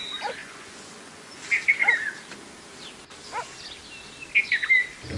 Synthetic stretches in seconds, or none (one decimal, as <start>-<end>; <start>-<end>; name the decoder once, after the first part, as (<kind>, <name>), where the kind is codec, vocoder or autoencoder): 0.4-1.4 (vocoder, Vocos)